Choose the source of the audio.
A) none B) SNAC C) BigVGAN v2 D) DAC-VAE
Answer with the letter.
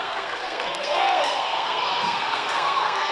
B